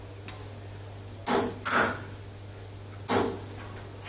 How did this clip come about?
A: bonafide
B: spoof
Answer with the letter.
A